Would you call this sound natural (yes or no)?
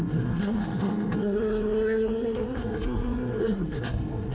no